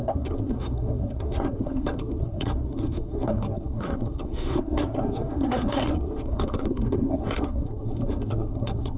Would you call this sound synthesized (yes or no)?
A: yes